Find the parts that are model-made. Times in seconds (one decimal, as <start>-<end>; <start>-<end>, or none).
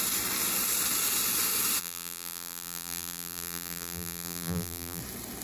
1.8-5.0